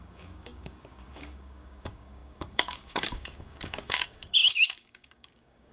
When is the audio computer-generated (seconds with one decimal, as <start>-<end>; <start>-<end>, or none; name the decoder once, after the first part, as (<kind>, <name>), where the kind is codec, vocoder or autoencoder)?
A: 0.0-5.7 (codec, DAC)

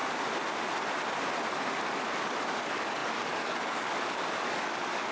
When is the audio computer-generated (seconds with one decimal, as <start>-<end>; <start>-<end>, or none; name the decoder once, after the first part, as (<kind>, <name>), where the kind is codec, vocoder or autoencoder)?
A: 2.4-5.1 (codec, DAC)

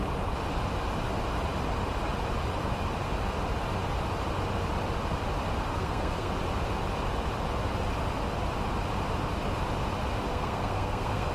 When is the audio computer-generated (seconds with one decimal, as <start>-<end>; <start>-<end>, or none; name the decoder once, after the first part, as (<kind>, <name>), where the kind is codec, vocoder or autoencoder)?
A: 5.7-6.3 (codec, SNAC); 10.3-11.3

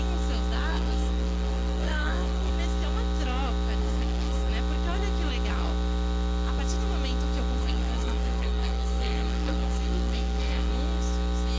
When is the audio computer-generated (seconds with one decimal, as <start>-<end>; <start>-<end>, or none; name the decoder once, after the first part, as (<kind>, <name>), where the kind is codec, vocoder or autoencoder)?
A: 0.7-2.5 (codec, SNAC); 3.8-4.5; 7.6-10.7

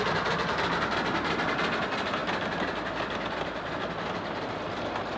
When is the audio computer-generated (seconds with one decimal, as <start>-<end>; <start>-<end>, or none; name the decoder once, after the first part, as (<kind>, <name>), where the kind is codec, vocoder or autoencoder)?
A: none

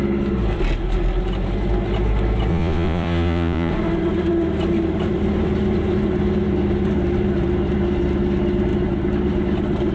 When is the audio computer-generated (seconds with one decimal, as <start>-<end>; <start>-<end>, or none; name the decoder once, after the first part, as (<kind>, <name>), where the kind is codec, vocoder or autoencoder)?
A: 2.5-3.7 (vocoder, Vocos)

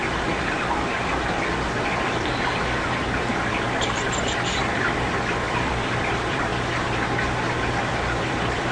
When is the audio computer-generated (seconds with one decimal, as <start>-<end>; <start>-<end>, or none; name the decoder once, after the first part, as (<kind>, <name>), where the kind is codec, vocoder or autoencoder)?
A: 4.6-6.5 (vocoder, BigVGAN v2); 7.8-8.7